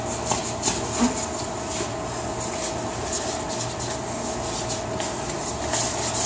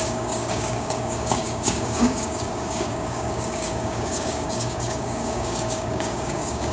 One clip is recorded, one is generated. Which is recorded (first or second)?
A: first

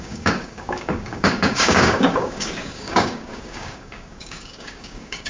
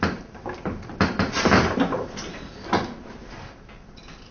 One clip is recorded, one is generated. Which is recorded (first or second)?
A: second